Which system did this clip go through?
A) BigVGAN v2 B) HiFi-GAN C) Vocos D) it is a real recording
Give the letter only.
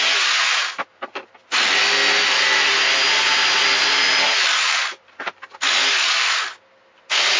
D